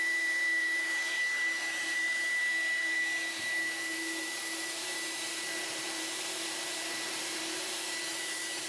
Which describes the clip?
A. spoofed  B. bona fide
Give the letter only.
A